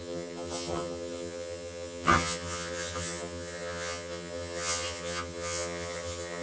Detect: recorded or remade remade